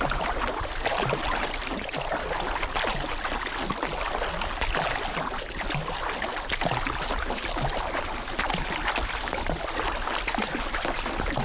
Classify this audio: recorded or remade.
recorded